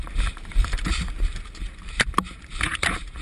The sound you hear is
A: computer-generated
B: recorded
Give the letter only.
A